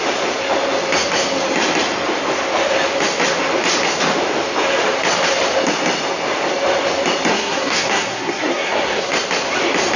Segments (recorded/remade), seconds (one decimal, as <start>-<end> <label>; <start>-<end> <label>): 0.0-7.3 recorded; 7.3-9.1 remade; 9.1-10.0 recorded